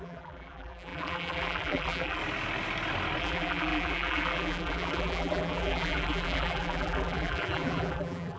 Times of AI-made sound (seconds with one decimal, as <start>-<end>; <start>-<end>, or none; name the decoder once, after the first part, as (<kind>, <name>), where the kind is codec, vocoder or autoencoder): 0.0-2.2 (vocoder, BigVGAN v2); 3.2-8.4